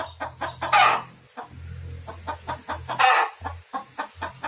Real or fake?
real